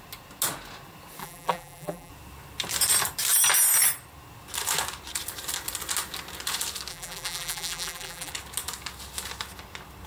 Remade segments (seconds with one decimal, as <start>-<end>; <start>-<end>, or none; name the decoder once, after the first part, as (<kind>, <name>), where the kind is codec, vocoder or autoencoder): 1.2-2.1 (vocoder, BigVGAN v2); 6.9-8.3